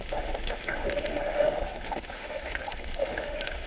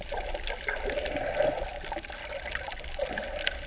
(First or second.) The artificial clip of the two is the first